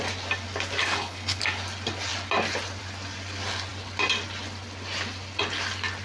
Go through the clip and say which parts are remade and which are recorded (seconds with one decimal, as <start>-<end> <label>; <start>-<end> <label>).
0.0-0.8 recorded; 0.8-1.4 remade; 1.4-6.0 recorded